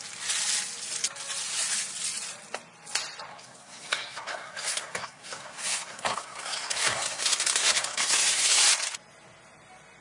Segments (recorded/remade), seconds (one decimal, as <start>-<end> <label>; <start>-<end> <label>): 0.0-3.3 recorded; 3.3-8.6 remade; 8.6-10.0 recorded